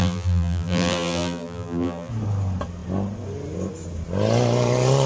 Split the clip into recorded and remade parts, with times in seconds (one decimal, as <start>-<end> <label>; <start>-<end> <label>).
0.0-2.1 remade; 2.1-5.1 recorded